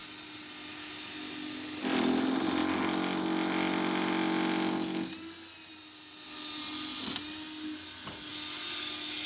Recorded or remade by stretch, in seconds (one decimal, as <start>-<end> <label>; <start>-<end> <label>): 0.0-9.3 recorded